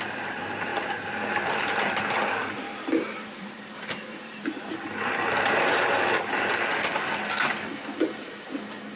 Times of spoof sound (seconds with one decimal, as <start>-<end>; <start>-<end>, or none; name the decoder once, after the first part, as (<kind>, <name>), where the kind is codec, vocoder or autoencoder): 0.7-1.9 (vocoder, BigVGAN v2); 2.4-6.3